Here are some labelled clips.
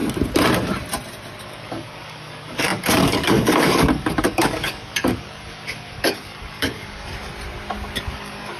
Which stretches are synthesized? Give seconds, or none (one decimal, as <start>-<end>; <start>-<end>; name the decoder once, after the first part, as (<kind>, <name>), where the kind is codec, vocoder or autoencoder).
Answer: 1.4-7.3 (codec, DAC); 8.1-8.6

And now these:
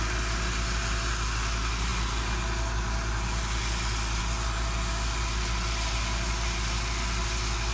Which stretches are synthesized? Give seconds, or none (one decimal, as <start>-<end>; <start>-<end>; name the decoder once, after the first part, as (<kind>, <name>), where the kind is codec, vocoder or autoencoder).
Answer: none

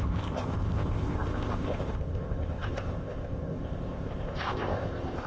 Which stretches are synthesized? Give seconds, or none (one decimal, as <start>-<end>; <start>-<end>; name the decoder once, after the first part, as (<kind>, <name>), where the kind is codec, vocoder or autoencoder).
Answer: 0.0-5.3 (codec, ZipCodec)